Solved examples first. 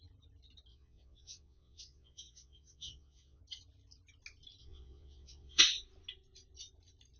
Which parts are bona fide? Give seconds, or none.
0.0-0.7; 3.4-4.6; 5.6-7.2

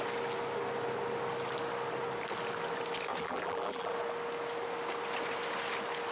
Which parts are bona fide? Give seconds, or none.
0.0-3.2; 3.9-6.1

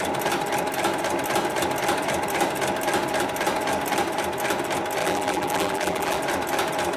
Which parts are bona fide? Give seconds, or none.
0.0-5.0; 6.2-7.0

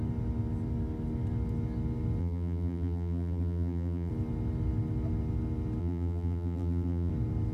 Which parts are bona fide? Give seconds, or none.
0.0-2.2; 4.1-5.8; 7.1-7.5

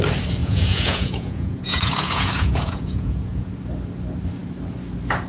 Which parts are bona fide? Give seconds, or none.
0.0-0.4; 3.6-5.3